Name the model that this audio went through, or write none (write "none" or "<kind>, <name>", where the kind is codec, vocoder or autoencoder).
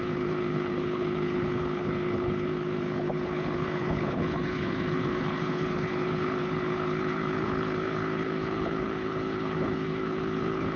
codec, HILCodec